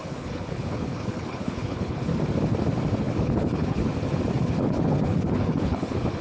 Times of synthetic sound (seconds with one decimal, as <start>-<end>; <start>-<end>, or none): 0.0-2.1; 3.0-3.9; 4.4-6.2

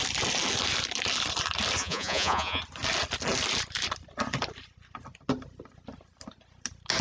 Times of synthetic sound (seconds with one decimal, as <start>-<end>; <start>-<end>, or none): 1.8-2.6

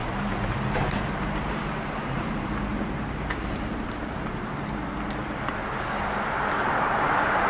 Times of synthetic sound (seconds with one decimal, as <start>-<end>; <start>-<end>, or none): 0.0-4.5; 6.6-7.1